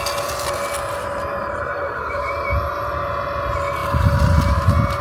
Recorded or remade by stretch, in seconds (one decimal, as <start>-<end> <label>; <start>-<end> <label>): 0.0-1.4 recorded; 1.4-3.0 remade; 3.0-5.0 recorded